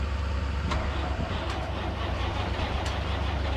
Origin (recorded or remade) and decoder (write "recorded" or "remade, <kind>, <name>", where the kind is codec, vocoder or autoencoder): recorded